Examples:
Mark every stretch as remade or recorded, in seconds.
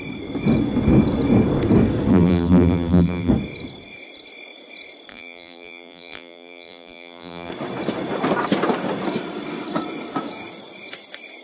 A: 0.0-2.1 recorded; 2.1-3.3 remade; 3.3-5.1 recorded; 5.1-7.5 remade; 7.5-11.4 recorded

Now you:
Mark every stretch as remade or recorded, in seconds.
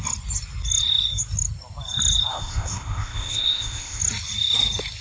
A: 0.0-2.3 recorded; 2.3-4.0 remade; 4.0-5.0 recorded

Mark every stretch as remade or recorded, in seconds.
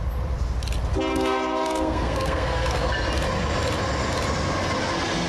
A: 0.0-1.1 recorded; 1.1-2.9 remade; 2.9-5.3 recorded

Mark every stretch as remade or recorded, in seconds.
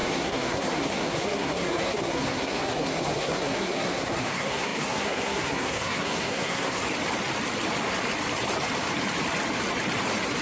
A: 0.0-6.8 remade; 6.8-10.4 recorded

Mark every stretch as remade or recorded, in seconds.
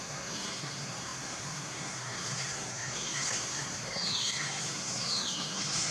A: 0.0-5.9 remade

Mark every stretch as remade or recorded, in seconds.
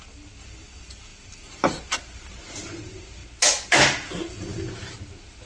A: 0.0-5.5 recorded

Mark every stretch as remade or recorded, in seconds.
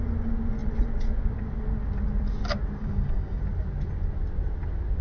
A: 0.0-2.8 recorded; 2.8-3.4 remade; 3.4-5.0 recorded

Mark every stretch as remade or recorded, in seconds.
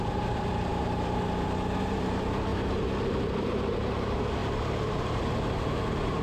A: 0.0-0.7 remade; 0.7-1.8 recorded; 1.8-2.5 remade; 2.5-3.5 recorded; 3.5-6.2 remade